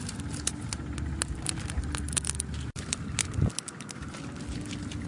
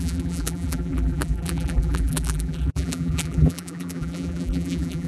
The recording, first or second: first